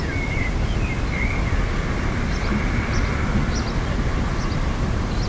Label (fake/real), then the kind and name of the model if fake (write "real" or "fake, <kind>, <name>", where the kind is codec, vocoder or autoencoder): real